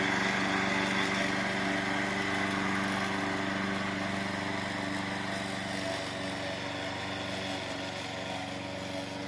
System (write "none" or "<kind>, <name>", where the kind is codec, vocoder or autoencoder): none